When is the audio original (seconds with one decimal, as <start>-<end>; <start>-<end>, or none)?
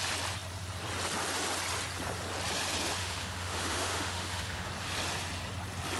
0.0-3.0; 4.7-6.0